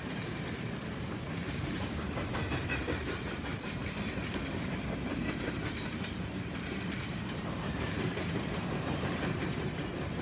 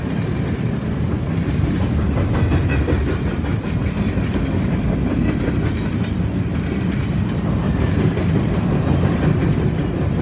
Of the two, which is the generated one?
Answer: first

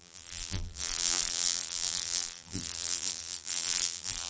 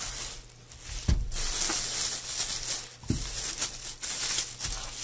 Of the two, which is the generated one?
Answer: first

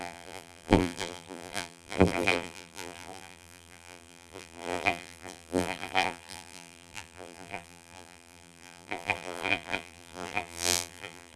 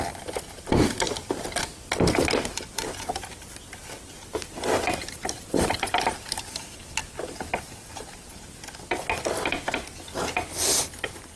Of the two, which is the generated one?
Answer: first